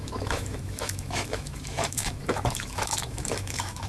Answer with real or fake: fake